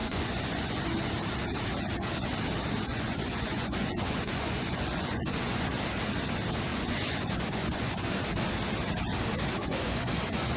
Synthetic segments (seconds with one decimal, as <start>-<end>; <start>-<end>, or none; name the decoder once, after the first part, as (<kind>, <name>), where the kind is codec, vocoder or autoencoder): 0.0-0.8 (vocoder, Vocos); 2.9-5.7; 6.7-8.1; 9.6-10.6